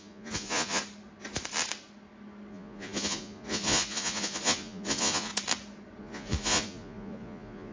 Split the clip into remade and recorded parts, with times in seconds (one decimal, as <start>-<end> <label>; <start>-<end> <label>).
0.0-0.8 remade; 0.8-2.5 recorded; 2.5-5.3 remade; 5.3-6.0 recorded; 6.0-7.7 remade